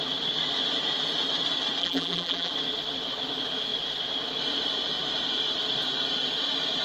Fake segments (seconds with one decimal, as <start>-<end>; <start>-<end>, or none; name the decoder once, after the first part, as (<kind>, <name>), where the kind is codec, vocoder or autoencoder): 1.8-2.5 (vocoder, BigVGAN v2)